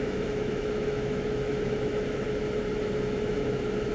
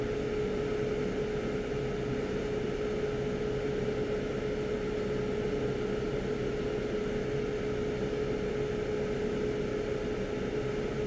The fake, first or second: first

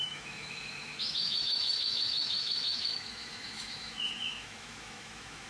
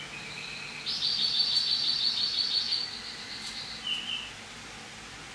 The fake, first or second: first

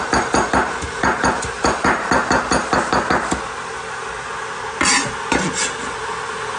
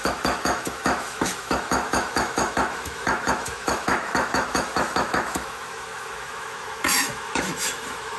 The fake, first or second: second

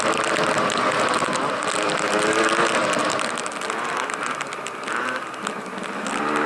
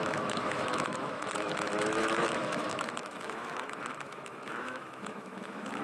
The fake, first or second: second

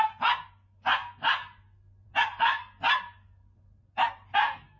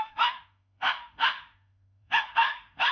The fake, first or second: second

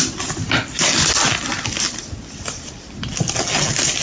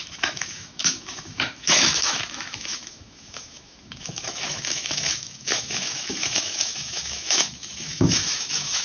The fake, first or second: second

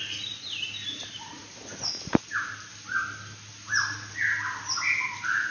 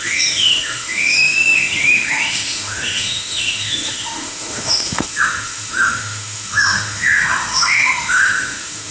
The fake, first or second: second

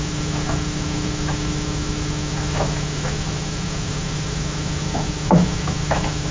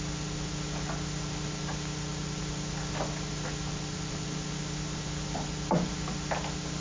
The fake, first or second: first